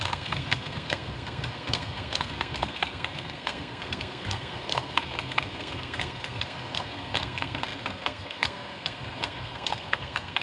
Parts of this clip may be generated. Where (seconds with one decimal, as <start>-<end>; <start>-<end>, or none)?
0.0-10.4